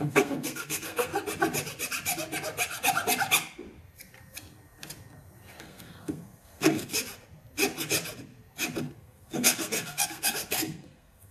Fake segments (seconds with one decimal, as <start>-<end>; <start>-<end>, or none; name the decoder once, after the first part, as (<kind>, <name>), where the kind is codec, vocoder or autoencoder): 0.0-1.1 (codec, SNAC); 5.6-6.9; 8.8-11.3